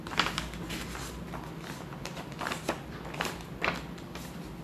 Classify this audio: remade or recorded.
recorded